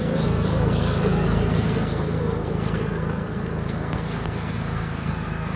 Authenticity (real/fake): fake